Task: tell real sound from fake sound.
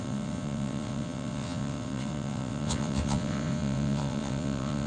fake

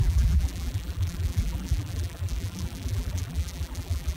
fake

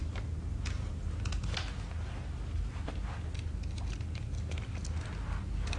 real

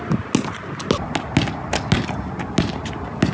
real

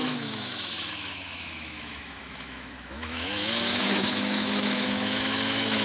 fake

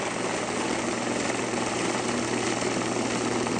real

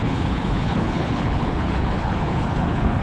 fake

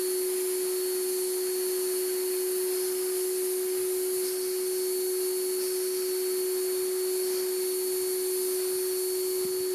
real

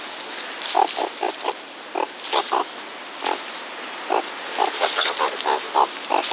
real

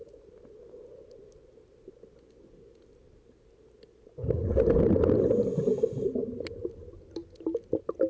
real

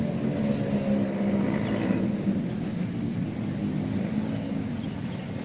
real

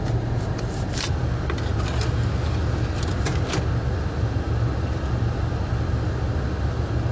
real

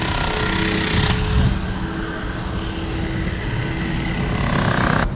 real